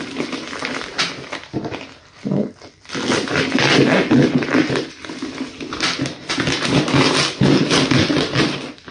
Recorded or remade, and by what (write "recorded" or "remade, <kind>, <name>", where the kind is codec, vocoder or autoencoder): recorded